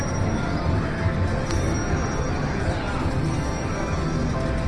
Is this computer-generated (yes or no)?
no